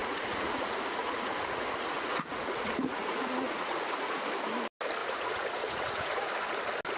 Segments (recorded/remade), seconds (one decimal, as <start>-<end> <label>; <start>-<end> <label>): 0.0-4.2 remade; 4.2-5.0 recorded; 5.0-6.3 remade; 6.3-7.0 recorded